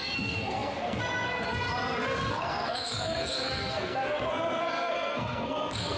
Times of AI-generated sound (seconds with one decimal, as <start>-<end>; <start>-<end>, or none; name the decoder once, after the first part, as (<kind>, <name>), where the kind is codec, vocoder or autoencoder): 0.0-1.7 (codec, SNAC); 2.3-6.0

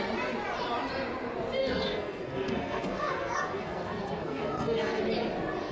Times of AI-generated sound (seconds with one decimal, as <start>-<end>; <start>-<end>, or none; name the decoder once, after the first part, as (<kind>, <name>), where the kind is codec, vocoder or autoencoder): 1.6-5.0 (codec, SNAC)